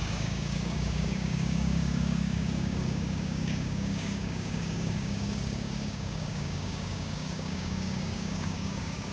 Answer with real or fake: fake